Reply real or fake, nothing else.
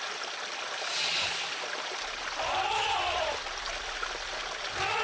real